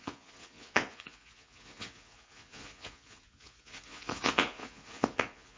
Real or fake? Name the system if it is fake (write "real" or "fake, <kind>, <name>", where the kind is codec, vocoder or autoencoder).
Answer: fake, vocoder, Vocos